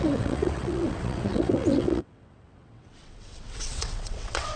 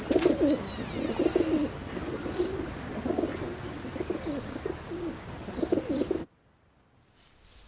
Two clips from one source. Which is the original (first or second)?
second